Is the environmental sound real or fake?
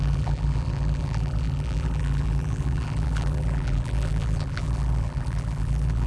fake